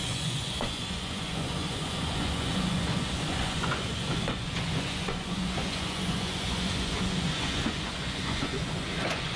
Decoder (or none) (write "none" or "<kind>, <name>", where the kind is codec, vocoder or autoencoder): vocoder, Vocos